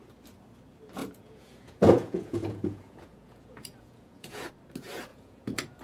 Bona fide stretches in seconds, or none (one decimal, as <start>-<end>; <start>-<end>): 0.0-1.0; 4.5-5.1